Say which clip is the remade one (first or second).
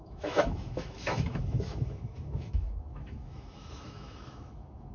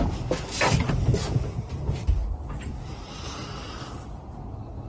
first